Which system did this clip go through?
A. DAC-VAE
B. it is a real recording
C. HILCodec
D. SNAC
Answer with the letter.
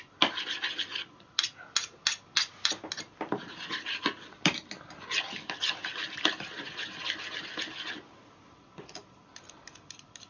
B